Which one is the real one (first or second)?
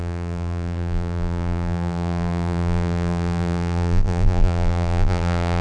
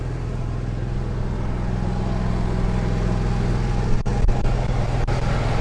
second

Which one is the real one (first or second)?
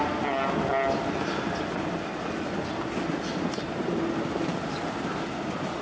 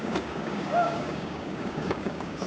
first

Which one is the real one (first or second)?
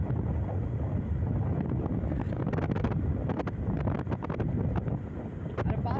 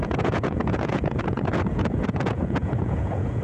first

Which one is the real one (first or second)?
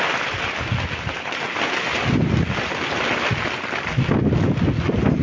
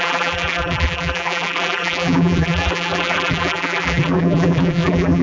first